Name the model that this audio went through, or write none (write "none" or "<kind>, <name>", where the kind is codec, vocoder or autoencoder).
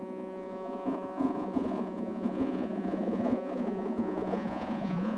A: vocoder, Vocos